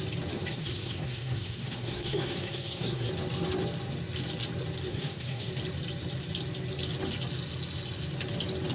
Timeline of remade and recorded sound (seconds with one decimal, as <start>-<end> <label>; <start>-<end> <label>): 0.0-0.4 recorded; 0.4-3.1 remade; 3.1-4.9 recorded; 4.9-5.5 remade; 5.5-8.7 recorded